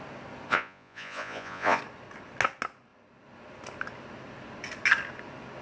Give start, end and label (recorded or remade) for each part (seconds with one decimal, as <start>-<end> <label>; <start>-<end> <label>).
0.0-0.5 recorded; 0.5-1.8 remade; 1.8-5.6 recorded